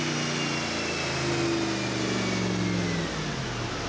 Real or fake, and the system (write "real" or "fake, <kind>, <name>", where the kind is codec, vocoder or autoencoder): real